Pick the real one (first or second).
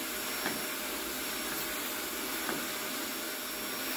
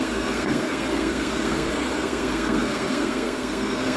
first